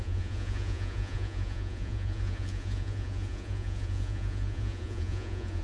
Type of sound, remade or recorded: remade